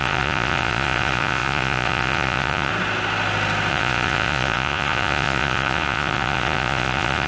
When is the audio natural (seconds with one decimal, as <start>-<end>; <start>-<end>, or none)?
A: 2.7-3.7